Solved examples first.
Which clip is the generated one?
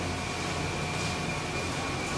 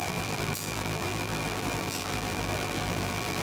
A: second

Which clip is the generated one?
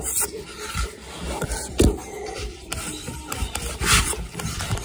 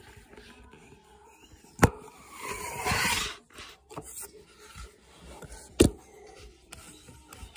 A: first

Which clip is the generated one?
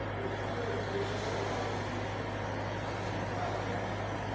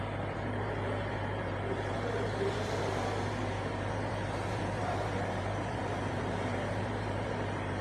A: second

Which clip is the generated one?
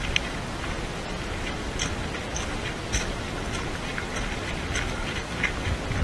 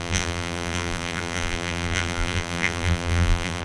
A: second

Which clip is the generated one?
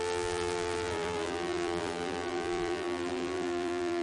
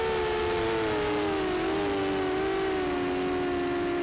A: first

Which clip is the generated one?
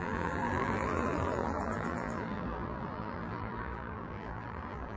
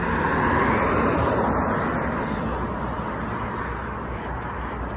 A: first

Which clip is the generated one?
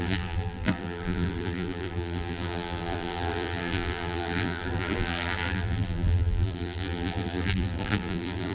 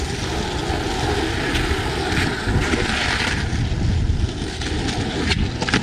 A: first